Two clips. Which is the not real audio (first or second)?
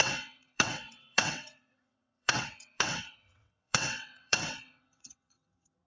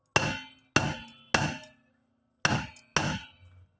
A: first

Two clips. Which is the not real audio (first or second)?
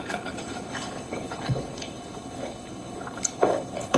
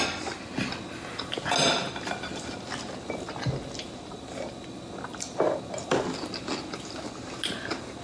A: first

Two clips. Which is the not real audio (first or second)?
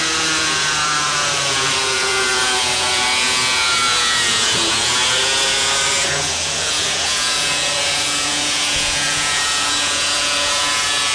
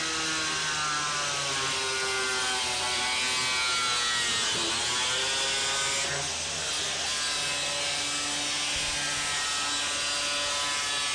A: first